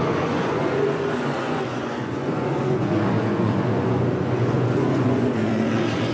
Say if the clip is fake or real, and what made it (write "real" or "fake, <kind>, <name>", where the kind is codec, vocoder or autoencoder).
fake, vocoder, Vocos